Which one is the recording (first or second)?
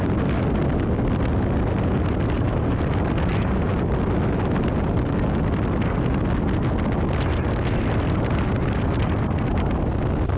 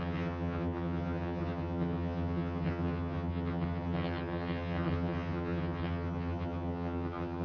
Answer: first